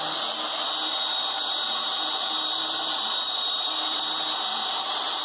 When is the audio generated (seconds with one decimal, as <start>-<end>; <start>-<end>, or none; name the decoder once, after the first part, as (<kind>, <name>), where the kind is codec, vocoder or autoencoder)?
0.9-4.0 (vocoder, BigVGAN v2); 4.5-5.2